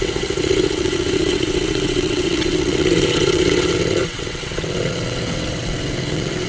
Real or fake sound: fake